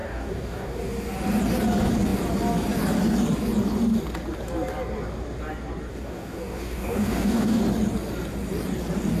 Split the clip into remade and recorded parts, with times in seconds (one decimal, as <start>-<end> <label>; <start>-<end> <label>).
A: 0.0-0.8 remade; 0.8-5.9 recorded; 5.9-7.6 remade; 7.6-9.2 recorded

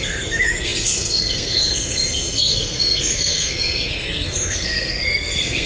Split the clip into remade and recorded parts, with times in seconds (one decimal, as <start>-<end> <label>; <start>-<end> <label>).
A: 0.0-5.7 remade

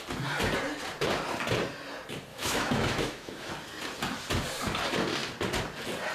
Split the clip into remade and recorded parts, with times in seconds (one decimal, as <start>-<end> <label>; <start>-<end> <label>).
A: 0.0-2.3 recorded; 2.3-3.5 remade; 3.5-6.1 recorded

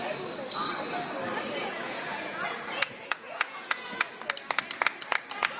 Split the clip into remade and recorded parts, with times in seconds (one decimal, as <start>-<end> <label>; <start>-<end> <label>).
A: 0.0-1.6 recorded; 1.6-4.2 remade; 4.2-5.6 recorded

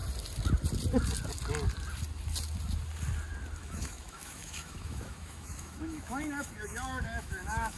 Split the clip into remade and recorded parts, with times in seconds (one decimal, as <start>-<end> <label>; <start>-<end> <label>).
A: 0.0-3.6 recorded; 3.6-7.8 remade

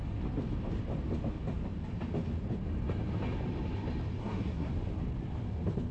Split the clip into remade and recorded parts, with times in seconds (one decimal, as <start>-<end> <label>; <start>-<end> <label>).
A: 0.0-4.2 recorded; 4.2-4.7 remade; 4.7-5.9 recorded

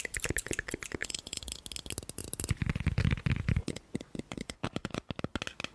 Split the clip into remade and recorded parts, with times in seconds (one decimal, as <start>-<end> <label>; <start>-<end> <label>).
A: 0.0-1.0 recorded; 1.0-1.5 remade; 1.5-3.6 recorded; 3.6-5.1 remade; 5.1-5.7 recorded

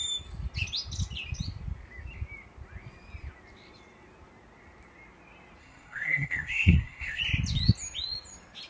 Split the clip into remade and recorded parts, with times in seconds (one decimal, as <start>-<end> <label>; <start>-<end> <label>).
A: 0.0-5.6 recorded; 5.6-7.2 remade; 7.2-8.7 recorded